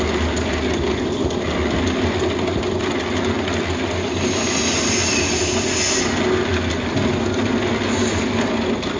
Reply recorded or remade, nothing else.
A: recorded